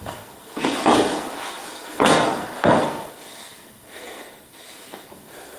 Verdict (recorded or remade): remade